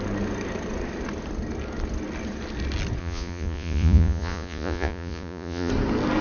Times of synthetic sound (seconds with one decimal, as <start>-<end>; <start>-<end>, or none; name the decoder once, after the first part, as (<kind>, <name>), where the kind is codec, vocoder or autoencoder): 3.0-5.7 (vocoder, Vocos)